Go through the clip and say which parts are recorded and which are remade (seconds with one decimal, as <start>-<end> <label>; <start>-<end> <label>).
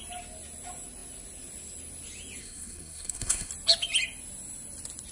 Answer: 0.0-2.4 recorded; 2.4-3.5 remade; 3.5-5.1 recorded